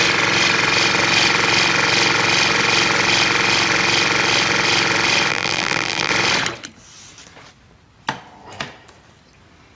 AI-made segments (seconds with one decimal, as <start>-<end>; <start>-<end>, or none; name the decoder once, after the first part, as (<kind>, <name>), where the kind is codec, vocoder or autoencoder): 5.3-6.1 (vocoder, BigVGAN v2)